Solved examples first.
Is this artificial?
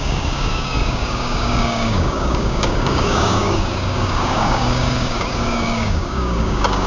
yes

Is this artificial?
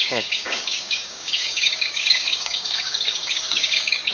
yes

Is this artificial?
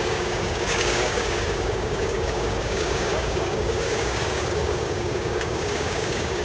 yes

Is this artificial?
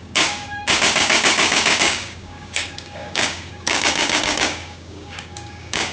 yes